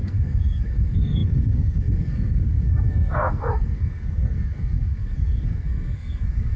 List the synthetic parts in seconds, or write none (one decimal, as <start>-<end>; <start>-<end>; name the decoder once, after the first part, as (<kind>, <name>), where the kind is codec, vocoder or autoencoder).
0.0-6.6 (codec, SNAC)